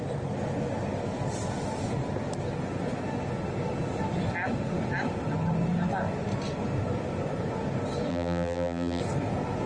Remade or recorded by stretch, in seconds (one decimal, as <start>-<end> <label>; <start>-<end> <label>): 0.0-8.1 recorded; 8.1-9.0 remade; 9.0-9.7 recorded